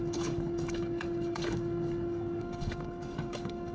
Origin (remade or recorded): remade